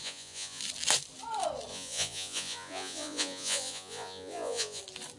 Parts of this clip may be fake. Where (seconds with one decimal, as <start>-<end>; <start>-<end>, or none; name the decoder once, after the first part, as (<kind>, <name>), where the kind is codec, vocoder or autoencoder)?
0.0-0.6 (vocoder, Vocos); 1.7-4.8